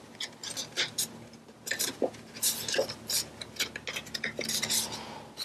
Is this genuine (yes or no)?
yes